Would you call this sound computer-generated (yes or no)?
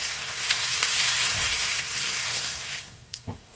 yes